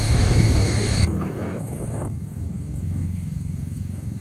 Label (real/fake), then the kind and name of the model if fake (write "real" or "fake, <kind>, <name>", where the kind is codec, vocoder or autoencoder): fake, codec, DAC